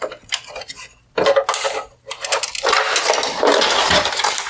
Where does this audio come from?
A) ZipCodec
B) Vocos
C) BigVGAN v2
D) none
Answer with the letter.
D